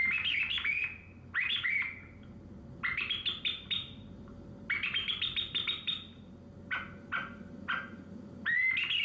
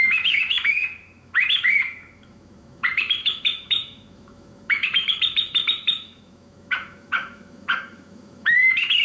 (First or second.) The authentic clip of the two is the first